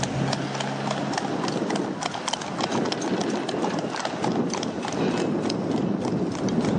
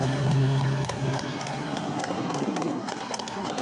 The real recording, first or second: first